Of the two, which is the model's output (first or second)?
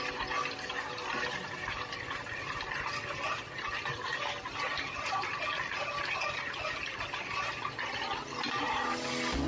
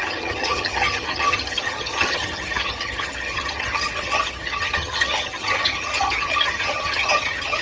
second